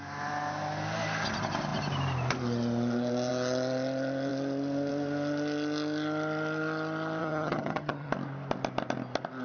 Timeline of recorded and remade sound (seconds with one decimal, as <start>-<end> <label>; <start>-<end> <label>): 0.0-7.2 recorded; 7.2-8.1 remade; 8.1-9.4 recorded